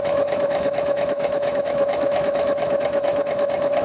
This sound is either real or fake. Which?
fake